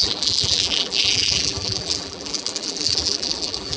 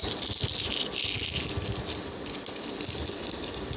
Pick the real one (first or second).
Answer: second